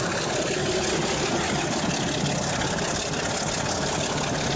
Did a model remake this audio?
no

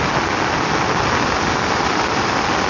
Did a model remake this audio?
no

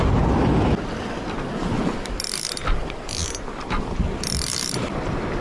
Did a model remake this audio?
no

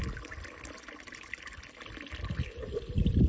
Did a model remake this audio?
no